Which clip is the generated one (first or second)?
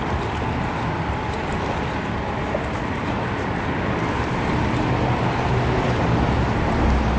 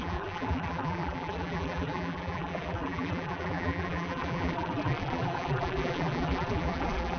second